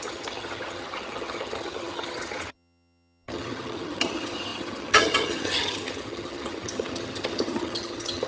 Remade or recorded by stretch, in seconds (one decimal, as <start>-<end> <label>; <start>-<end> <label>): 0.0-8.3 remade